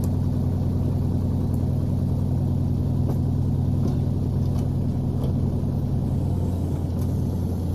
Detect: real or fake real